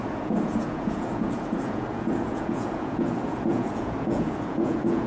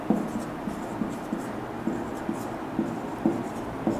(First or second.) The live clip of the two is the second